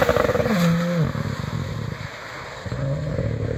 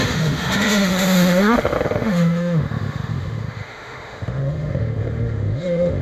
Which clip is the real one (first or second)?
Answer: first